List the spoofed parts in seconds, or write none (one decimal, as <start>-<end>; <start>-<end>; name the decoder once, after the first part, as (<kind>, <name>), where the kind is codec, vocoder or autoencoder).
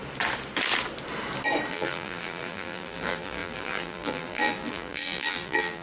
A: 1.7-5.8 (vocoder, BigVGAN v2)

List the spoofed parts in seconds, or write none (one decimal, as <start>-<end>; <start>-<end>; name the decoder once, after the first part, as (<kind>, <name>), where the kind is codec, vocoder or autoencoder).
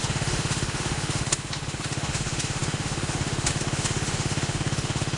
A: 0.0-5.2 (autoencoder, DAC-VAE)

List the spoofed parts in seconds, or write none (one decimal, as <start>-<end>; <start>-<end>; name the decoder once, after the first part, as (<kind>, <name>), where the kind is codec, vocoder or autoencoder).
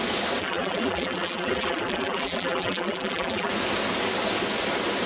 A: 0.4-3.5 (vocoder, BigVGAN v2)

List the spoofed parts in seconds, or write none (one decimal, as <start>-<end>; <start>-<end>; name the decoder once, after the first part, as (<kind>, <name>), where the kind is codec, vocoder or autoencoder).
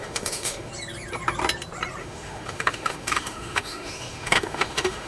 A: 0.0-0.7 (autoencoder, DAC-VAE); 2.0-5.1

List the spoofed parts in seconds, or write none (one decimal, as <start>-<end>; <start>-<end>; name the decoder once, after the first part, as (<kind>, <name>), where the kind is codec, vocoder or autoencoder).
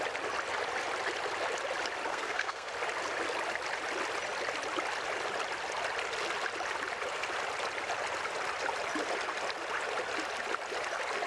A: 2.1-2.7 (codec, SNAC)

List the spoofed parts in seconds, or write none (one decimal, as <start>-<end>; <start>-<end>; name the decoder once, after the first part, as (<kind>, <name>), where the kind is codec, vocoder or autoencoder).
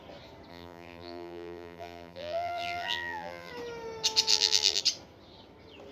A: 0.5-3.5 (vocoder, BigVGAN v2); 4.3-4.8